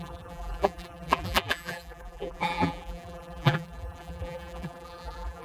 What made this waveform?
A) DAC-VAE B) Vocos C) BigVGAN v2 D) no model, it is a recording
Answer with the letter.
C